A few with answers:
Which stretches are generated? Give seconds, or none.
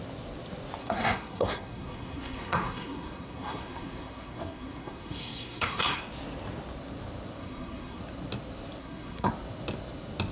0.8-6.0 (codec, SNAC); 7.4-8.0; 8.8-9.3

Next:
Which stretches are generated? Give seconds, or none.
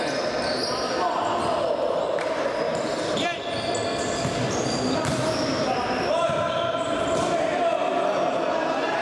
none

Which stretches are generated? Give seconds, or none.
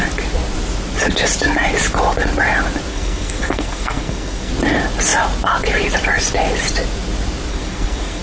2.9-4.5 (codec, SNAC); 7.5-8.2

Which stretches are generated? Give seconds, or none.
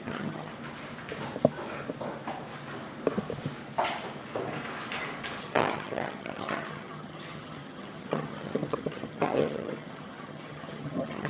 0.0-0.5 (vocoder, HiFi-GAN); 5.4-11.3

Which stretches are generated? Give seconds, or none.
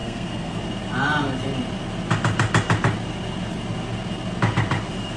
0.0-0.6 (codec, SNAC)